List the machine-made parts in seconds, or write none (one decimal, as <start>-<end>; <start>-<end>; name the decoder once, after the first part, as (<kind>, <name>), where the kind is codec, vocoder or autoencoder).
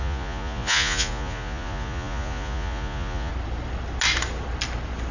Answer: 0.0-3.3 (vocoder, Vocos)